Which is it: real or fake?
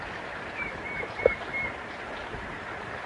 real